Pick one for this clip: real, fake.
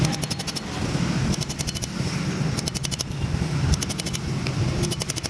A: real